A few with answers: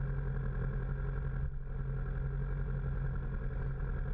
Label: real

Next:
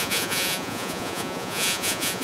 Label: fake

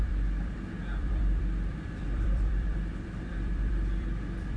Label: fake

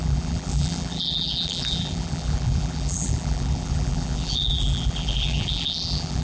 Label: fake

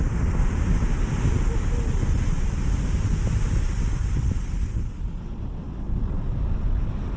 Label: real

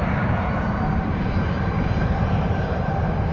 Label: real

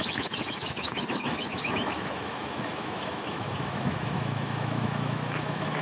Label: fake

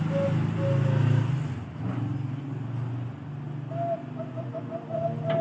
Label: real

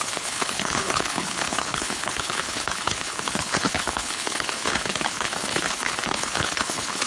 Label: fake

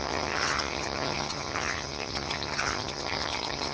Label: fake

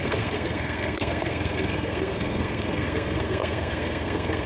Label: fake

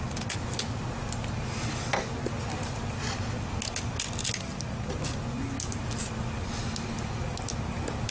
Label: real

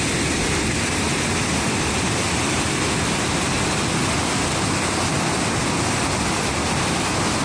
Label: real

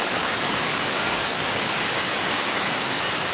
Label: fake